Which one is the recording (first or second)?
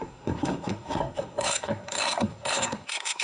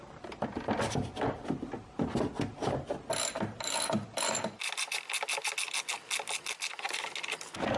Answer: second